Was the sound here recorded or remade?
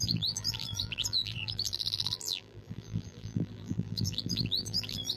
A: remade